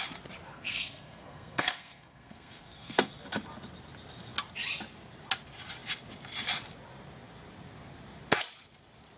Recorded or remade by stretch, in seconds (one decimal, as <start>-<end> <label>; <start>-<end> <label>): 0.0-0.5 recorded; 0.5-3.1 remade; 3.1-9.2 recorded